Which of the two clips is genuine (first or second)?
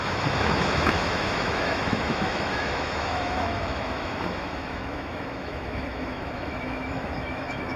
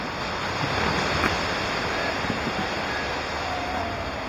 second